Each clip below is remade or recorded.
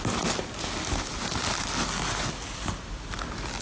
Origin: recorded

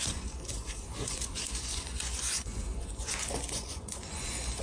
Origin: remade